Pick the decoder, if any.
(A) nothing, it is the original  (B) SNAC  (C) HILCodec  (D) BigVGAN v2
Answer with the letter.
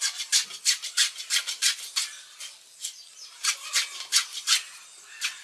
A